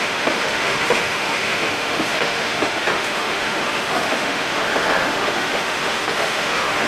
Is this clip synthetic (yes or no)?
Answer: yes